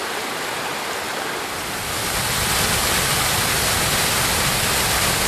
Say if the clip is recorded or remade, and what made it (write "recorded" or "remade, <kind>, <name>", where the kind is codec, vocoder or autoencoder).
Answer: recorded